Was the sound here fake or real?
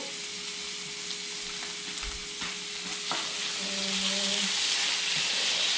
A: real